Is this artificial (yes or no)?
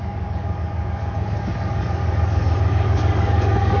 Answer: yes